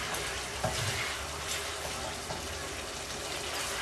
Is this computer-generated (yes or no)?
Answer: no